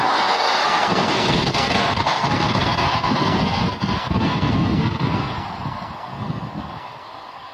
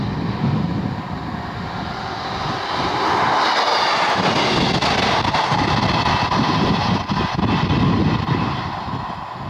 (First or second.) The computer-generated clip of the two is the first